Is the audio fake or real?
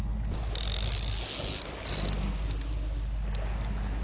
real